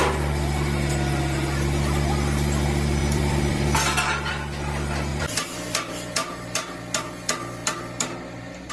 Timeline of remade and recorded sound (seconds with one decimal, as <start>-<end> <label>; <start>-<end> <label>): 0.0-3.0 recorded; 3.0-4.3 remade; 4.3-5.1 recorded; 5.1-6.8 remade; 6.8-7.6 recorded; 7.6-8.7 remade